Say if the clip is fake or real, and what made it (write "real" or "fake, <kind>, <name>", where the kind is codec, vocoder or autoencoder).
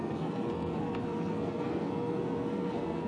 fake, codec, SNAC